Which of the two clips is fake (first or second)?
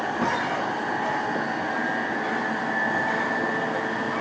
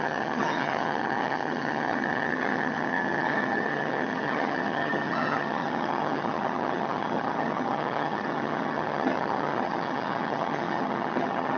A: second